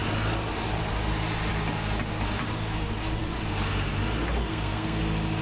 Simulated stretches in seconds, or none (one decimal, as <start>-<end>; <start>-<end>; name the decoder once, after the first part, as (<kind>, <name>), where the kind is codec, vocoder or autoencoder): 4.5-5.0 (codec, SNAC)